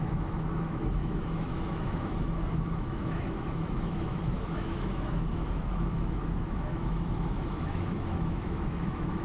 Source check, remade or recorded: remade